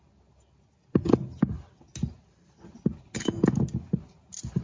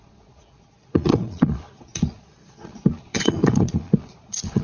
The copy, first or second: second